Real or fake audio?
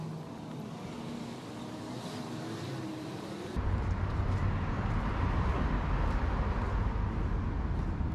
real